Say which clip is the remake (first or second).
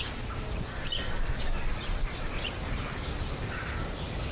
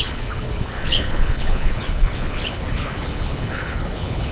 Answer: second